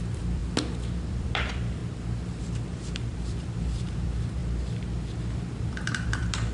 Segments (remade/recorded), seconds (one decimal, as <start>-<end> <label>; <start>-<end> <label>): 0.0-0.4 remade; 0.4-1.1 recorded; 1.1-1.8 remade; 1.8-2.4 recorded; 2.4-4.4 remade; 4.4-5.6 recorded; 5.6-6.5 remade